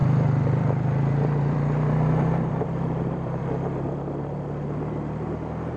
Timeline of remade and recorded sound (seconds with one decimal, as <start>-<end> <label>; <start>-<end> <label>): 0.0-3.5 remade; 3.5-5.8 recorded